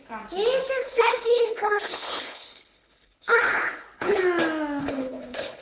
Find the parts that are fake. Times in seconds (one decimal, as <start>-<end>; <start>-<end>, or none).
0.8-4.2; 4.8-5.6